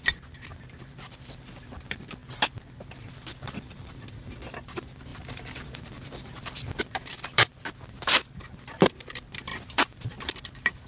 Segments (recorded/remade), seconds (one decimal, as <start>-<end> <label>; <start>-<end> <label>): 0.0-2.2 remade; 2.2-3.6 recorded; 3.6-7.5 remade; 7.5-9.1 recorded; 9.1-10.9 remade